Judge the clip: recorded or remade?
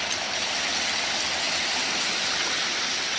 recorded